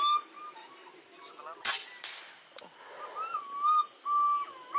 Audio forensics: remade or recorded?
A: recorded